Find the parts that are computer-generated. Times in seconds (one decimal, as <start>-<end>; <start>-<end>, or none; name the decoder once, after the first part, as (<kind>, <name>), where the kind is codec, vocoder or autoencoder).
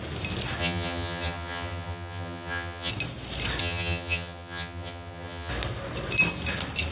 0.6-2.9 (vocoder, HiFi-GAN); 3.6-5.5